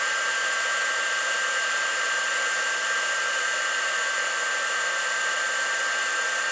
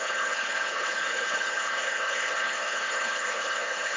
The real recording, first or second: first